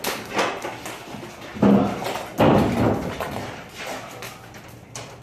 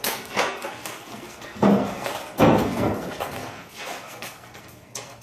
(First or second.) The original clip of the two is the first